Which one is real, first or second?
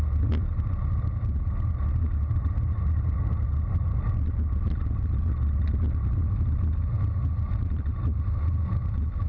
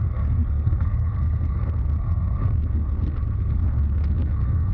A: first